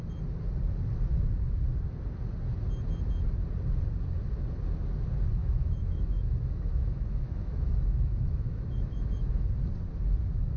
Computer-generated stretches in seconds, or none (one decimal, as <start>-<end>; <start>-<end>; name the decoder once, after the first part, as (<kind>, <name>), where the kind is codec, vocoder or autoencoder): 5.4-9.5 (autoencoder, DAC-VAE)

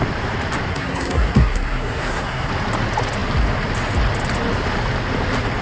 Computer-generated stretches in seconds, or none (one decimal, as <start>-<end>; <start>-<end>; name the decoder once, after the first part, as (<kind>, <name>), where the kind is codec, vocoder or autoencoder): 0.7-2.5 (codec, SNAC)

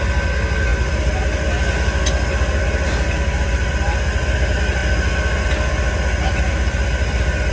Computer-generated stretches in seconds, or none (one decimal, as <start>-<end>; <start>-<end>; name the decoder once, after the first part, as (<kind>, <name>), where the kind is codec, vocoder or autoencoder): none

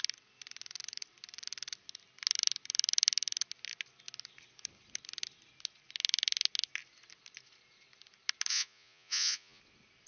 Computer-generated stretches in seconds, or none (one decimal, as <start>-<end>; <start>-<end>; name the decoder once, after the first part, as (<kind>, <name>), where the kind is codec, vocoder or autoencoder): 8.5-9.6 (vocoder, Vocos)

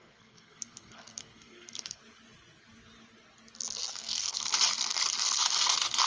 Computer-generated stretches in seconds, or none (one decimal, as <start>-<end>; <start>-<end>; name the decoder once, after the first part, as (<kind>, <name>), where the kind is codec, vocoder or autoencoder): 0.0-2.0 (codec, SNAC); 3.9-4.5

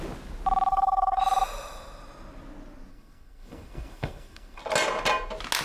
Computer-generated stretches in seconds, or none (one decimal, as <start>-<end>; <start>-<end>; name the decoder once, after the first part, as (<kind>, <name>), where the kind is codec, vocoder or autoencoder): 0.7-1.2 (codec, SNAC); 2.9-4.6

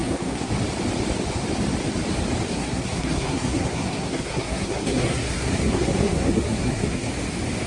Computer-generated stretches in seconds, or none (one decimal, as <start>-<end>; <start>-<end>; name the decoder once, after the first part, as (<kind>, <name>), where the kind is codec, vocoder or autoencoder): 0.0-0.5 (codec, SNAC); 2.5-7.1

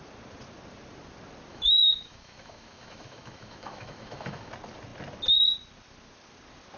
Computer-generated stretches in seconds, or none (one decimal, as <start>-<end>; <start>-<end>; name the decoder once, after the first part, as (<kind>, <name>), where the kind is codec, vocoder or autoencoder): 1.5-4.5 (autoencoder, DAC-VAE)